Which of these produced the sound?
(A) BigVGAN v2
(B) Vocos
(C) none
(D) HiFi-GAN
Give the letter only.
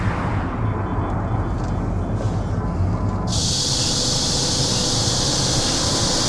C